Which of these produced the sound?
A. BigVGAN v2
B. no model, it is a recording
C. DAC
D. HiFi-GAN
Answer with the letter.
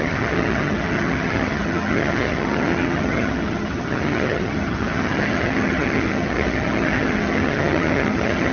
D